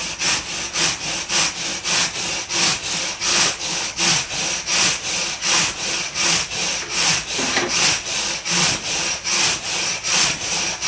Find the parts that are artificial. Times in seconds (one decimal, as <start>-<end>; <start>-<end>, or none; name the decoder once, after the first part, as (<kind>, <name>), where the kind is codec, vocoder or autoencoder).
3.3-4.0 (codec, HILCodec)